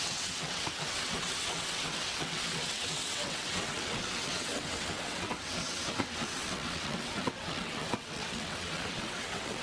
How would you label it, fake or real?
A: fake